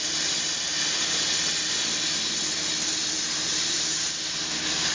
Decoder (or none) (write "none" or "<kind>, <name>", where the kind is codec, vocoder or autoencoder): none